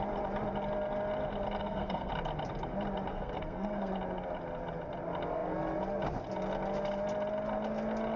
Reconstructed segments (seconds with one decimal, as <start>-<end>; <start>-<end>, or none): 1.6-2.1; 3.1-3.9